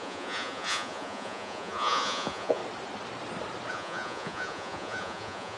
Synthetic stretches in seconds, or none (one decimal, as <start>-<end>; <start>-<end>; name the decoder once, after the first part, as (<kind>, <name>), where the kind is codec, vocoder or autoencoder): 0.0-2.6 (vocoder, Vocos); 3.7-5.6